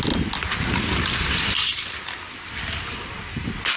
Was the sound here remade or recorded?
recorded